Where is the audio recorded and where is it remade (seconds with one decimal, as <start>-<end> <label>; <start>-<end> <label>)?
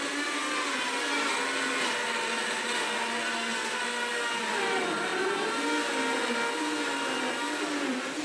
0.0-8.2 recorded